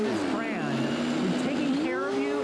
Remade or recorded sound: recorded